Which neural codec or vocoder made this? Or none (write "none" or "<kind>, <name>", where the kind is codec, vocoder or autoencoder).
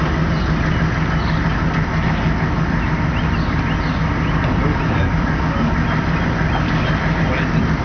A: none